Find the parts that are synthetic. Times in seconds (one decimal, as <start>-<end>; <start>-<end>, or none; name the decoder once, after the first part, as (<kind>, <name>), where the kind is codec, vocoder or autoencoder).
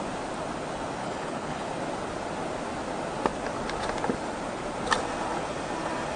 1.0-1.7 (codec, HILCodec)